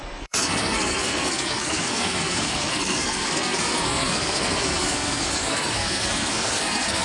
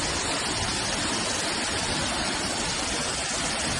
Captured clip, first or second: second